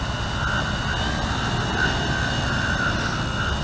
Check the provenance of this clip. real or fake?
real